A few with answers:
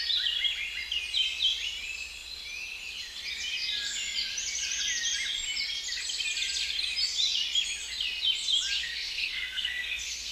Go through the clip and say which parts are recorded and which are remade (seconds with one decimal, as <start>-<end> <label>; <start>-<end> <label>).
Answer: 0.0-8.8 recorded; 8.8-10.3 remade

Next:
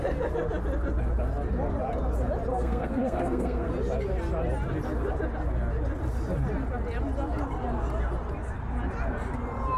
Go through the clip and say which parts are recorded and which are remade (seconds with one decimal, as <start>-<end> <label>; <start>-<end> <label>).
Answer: 0.0-2.5 recorded; 2.5-3.7 remade; 3.7-9.8 recorded

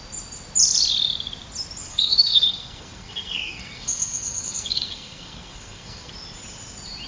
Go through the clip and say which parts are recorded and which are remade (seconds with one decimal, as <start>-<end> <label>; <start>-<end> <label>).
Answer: 0.0-1.8 recorded; 1.8-6.1 remade; 6.1-7.1 recorded

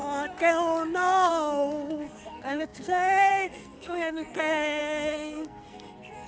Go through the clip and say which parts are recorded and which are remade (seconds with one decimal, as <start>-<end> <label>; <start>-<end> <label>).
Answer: 0.0-1.3 recorded; 1.3-6.3 remade

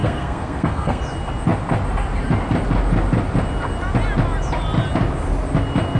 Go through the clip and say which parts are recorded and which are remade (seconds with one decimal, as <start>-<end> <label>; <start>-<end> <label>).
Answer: 0.0-1.0 remade; 1.0-6.0 recorded

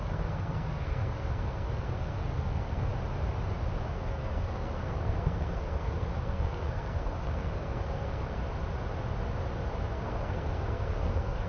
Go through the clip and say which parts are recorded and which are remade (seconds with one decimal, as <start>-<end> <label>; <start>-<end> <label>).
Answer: 0.0-2.9 remade; 2.9-3.9 recorded; 3.9-8.4 remade; 8.4-9.9 recorded; 9.9-11.5 remade

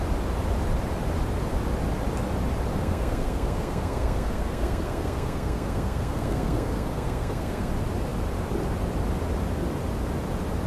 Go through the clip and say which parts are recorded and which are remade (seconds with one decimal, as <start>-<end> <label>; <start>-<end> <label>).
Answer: 0.0-2.7 recorded; 2.7-7.7 remade; 7.7-10.7 recorded